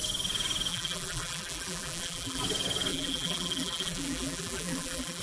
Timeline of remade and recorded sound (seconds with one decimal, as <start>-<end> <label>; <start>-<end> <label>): 0.0-0.7 recorded; 0.7-2.4 remade; 2.4-2.9 recorded; 2.9-5.2 remade